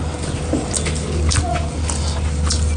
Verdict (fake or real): real